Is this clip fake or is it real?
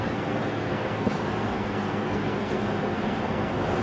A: fake